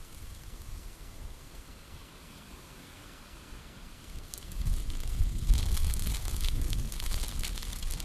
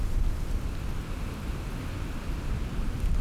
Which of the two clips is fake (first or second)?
first